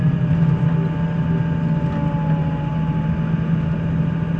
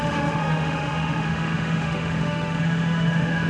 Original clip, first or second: first